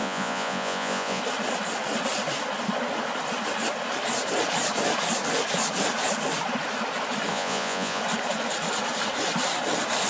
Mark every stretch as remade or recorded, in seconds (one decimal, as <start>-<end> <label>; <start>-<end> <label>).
0.0-1.2 remade; 1.2-7.3 recorded; 7.3-8.0 remade; 8.0-10.1 recorded